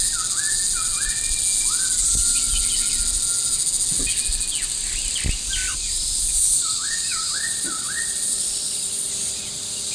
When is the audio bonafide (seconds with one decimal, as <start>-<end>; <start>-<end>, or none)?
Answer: 0.0-5.7; 9.1-9.9